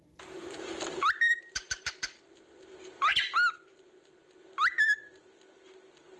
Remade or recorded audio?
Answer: recorded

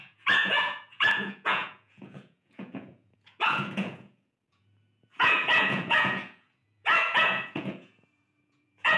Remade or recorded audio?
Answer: remade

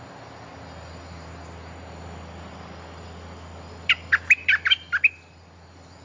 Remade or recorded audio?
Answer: recorded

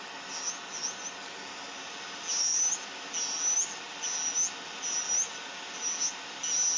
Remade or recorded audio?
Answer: recorded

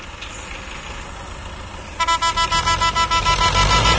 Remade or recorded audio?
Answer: recorded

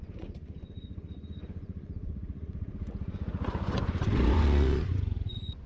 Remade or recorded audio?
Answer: remade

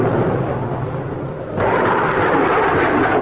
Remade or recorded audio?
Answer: recorded